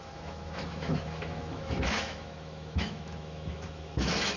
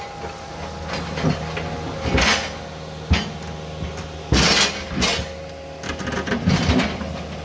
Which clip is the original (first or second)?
second